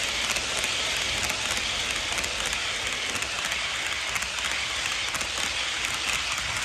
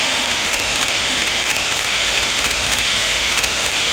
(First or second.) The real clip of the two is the first